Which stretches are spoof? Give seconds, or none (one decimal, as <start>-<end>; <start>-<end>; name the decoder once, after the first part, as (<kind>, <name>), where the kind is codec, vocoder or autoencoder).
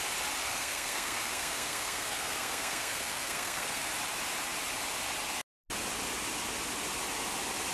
0.4-3.9 (codec, SNAC)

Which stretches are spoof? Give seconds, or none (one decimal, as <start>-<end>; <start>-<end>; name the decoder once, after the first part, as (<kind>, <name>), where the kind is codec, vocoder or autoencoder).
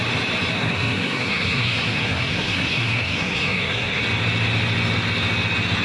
0.6-4.0 (codec, SNAC)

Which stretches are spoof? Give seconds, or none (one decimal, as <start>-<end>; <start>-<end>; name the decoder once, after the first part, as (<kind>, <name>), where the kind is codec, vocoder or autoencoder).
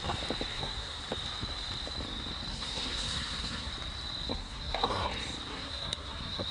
0.5-1.0 (codec, SNAC); 2.5-3.7; 4.3-5.1; 5.5-6.5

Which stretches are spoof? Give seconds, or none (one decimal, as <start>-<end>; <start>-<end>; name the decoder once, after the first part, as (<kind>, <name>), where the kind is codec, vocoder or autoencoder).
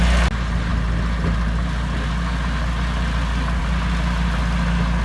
none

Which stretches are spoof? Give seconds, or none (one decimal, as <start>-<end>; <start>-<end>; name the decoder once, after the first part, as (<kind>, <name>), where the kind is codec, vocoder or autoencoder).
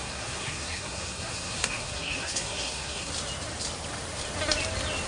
0.0-3.1 (codec, SNAC)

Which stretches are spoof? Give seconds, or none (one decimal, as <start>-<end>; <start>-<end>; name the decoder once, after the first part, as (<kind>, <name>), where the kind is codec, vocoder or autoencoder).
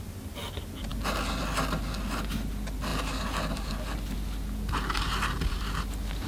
none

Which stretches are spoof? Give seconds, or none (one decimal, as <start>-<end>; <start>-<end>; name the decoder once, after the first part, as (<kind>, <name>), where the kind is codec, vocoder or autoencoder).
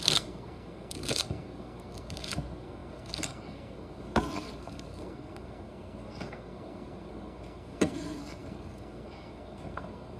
0.0-10.2 (codec, SNAC)